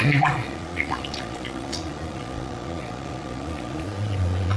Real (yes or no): no